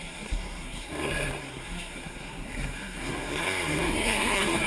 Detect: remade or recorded remade